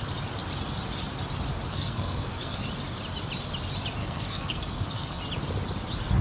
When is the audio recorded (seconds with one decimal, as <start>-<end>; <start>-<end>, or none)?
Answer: 0.0-1.7; 2.6-4.0; 5.2-6.2

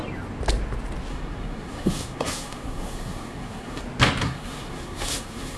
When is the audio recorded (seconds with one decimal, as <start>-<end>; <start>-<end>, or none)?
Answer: 0.0-1.1; 3.8-4.2

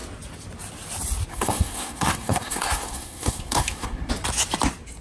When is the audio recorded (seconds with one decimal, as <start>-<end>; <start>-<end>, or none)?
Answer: 0.0-1.3; 4.1-5.0

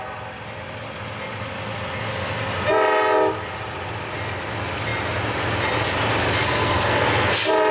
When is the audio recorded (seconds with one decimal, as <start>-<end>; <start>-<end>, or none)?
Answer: 0.0-6.4; 7.3-7.7

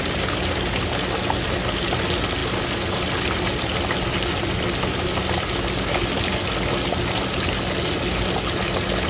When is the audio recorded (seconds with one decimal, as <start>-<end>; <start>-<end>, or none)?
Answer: 0.0-9.1

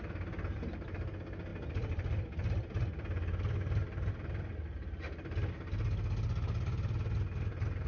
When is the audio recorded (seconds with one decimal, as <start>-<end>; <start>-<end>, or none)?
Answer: 0.0-7.9

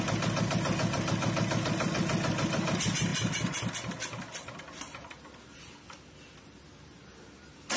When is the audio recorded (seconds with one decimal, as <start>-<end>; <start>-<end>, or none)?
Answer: 0.0-7.8